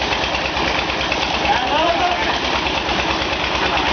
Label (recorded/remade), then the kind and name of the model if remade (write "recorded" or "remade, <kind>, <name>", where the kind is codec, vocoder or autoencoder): recorded